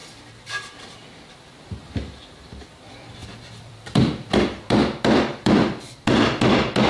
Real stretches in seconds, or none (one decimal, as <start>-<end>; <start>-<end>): 0.0-2.4